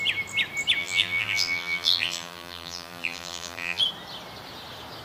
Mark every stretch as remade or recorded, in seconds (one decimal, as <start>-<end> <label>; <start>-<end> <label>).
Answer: 0.0-0.8 recorded; 0.8-3.8 remade; 3.8-5.0 recorded